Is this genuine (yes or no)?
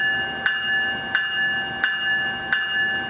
yes